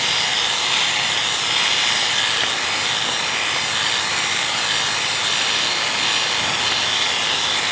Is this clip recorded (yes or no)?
yes